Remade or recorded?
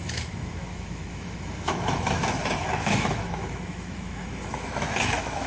remade